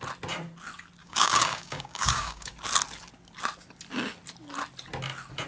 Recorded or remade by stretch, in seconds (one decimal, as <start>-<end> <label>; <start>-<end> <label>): 0.0-1.0 recorded; 1.0-2.5 remade; 2.5-5.5 recorded